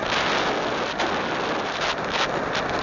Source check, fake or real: real